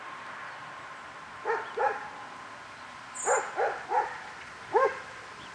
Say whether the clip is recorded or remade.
recorded